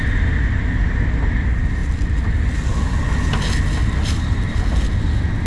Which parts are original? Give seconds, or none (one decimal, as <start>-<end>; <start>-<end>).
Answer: 0.0-5.5